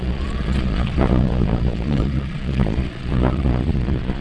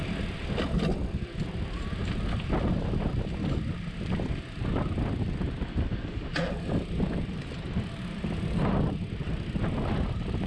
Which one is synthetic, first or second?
first